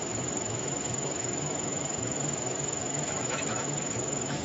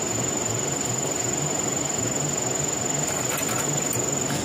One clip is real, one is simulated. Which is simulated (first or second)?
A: first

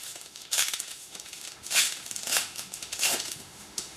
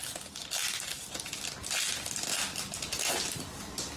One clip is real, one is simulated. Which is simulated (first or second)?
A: first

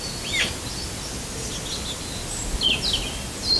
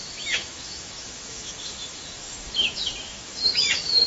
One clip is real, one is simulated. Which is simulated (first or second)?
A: second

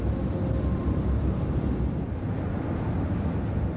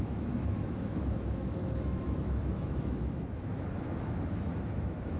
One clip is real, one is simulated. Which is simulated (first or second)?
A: second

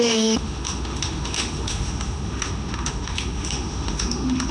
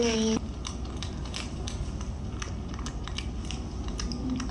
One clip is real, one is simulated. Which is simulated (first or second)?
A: first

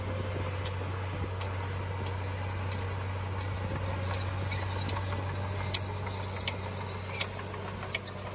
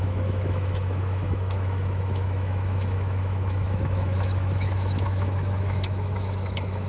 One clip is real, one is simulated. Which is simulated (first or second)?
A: second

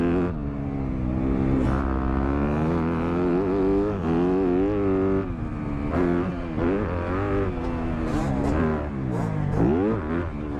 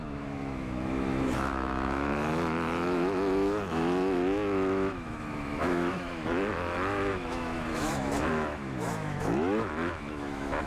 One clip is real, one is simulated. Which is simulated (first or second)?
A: second